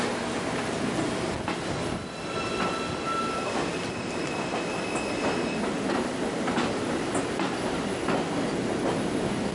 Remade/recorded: recorded